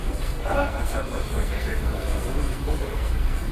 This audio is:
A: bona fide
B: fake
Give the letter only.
B